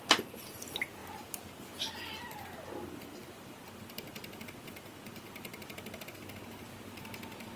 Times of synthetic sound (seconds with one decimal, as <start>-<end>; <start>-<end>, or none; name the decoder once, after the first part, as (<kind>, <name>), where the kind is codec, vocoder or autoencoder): none